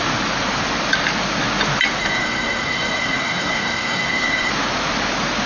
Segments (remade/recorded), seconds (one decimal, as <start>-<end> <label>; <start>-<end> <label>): 0.0-2.0 recorded; 2.0-4.5 remade; 4.5-5.5 recorded